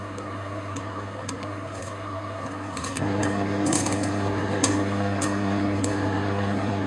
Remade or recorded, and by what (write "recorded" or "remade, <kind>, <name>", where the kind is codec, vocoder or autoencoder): remade, codec, SNAC